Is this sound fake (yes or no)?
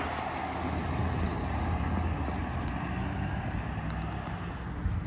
no